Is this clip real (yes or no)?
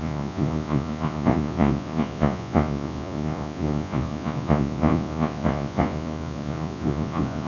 no